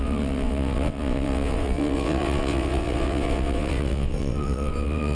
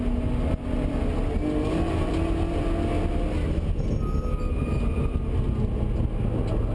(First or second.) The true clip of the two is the second